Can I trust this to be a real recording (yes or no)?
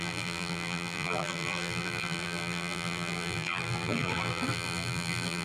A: no